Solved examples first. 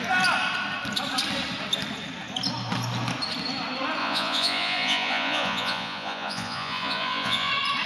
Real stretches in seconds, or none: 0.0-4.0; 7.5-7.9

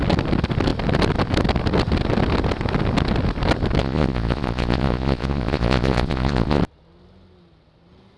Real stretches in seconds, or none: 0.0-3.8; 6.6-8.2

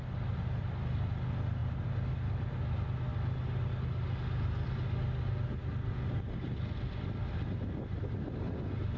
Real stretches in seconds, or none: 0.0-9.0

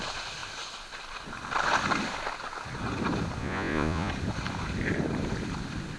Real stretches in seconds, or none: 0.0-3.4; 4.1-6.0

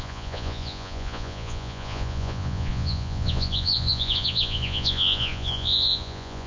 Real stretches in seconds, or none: none

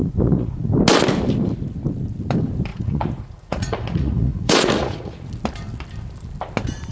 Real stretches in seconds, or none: 0.7-2.7; 5.3-6.9

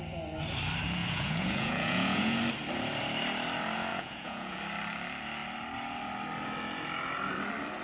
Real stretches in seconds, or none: 0.0-1.0; 2.4-3.9; 4.6-7.8